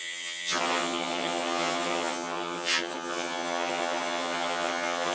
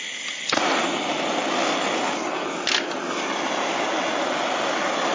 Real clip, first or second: second